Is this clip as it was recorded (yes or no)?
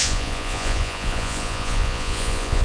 no